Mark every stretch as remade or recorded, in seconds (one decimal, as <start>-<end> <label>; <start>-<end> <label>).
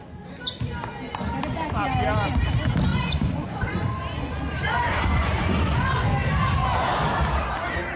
0.0-2.9 recorded; 2.9-6.1 remade; 6.1-8.0 recorded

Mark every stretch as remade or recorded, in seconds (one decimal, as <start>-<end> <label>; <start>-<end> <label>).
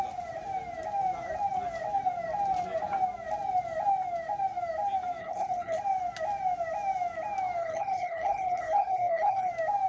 0.0-5.2 recorded; 5.2-5.8 remade; 5.8-7.6 recorded; 7.6-9.5 remade; 9.5-9.9 recorded